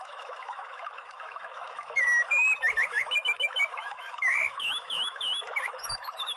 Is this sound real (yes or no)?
no